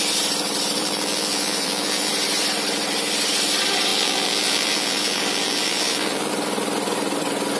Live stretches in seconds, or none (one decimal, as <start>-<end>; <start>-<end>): 0.0-0.8; 2.1-3.9; 6.3-7.6